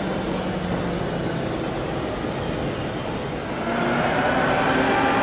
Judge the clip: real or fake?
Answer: real